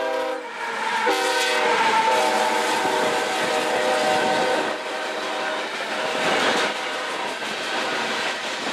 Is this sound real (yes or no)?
yes